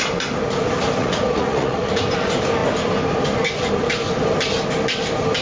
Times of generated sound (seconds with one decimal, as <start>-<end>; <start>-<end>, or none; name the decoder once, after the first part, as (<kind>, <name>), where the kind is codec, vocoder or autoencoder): 1.0-1.9 (vocoder, Vocos)